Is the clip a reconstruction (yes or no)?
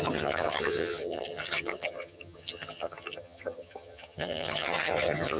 yes